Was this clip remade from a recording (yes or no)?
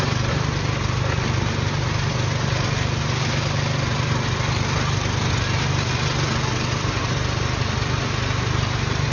no